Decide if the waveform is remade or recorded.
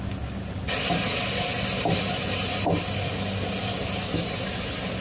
recorded